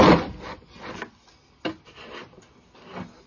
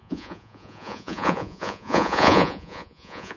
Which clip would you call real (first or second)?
first